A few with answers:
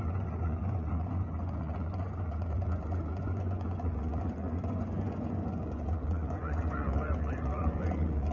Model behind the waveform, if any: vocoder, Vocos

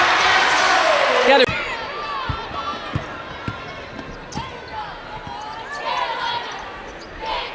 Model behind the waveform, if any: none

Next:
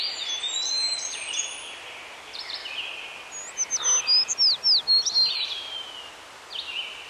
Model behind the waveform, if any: none